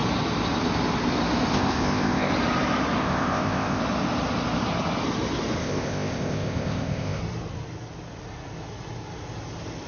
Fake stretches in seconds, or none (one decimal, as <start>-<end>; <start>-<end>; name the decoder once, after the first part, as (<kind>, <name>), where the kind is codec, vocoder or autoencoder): 1.5-2.3 (codec, ZipCodec); 3.0-3.8; 5.6-7.2